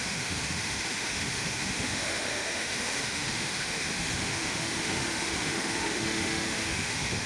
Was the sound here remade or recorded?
remade